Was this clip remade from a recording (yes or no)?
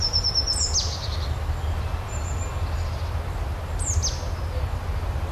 no